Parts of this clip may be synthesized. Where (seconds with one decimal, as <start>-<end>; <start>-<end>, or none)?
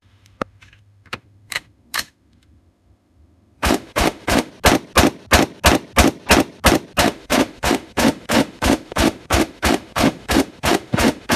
0.0-4.5; 7.0-11.4